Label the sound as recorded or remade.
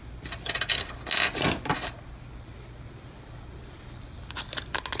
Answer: recorded